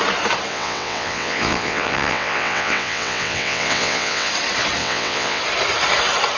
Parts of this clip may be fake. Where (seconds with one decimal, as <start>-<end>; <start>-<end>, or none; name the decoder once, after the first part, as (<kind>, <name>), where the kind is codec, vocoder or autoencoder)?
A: 0.5-4.3 (vocoder, WaveNeXt); 4.8-5.4

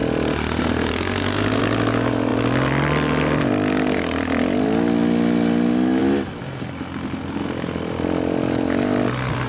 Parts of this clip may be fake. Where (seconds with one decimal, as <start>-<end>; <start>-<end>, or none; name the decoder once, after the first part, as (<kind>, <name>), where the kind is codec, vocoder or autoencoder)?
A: none

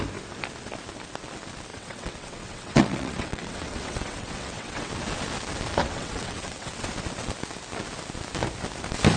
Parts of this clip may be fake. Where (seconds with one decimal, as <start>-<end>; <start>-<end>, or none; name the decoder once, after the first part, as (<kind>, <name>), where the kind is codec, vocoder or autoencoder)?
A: 1.7-4.9 (vocoder, WaveNeXt); 5.8-6.9

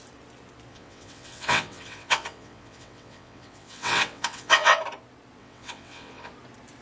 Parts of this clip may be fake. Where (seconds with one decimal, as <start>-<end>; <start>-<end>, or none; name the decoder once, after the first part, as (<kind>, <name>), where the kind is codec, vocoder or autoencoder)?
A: 0.7-4.8 (vocoder, WaveNeXt); 5.4-6.3

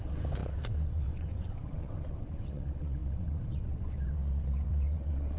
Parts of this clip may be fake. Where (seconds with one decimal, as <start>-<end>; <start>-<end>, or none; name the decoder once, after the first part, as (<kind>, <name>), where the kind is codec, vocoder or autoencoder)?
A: 0.0-5.4 (vocoder, WaveNeXt)

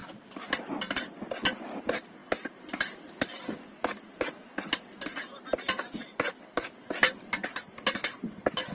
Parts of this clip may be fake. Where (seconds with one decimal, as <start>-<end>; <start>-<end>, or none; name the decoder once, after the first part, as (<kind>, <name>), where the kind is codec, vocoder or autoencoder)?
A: none

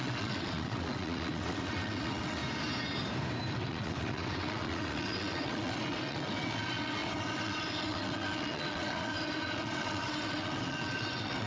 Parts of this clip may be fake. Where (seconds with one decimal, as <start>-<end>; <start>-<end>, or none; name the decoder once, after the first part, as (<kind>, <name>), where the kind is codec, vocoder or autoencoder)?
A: 0.0-2.4 (vocoder, WaveNeXt); 3.5-11.5

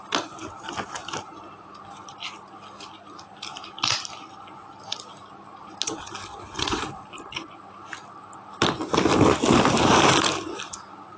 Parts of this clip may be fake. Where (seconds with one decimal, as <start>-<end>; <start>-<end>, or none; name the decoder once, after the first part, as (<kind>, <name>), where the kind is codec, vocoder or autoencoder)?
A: 6.3-6.8 (vocoder, WaveNeXt)